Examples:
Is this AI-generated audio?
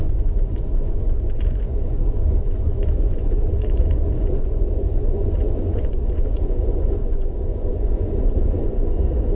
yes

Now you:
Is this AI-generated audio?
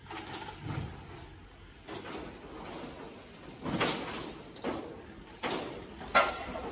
no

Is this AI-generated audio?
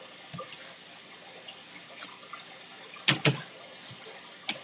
no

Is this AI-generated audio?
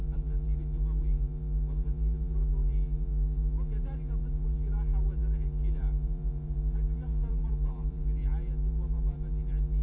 yes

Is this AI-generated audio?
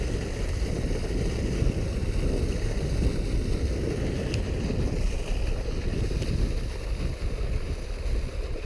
no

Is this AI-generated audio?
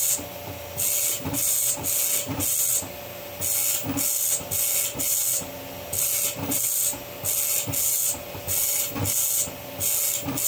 no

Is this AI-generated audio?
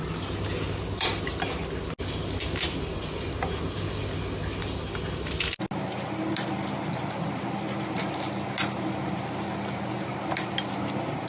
no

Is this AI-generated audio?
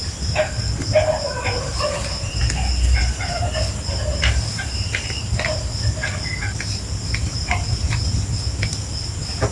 no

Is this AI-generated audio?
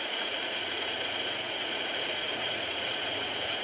yes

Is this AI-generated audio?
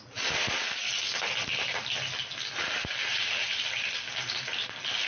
no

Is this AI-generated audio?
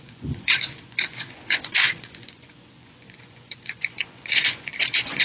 yes